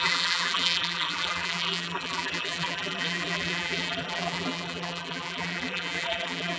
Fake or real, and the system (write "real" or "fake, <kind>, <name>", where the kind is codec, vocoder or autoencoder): fake, vocoder, BigVGAN v2